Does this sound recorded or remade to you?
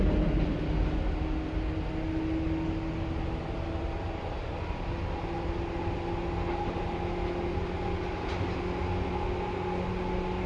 recorded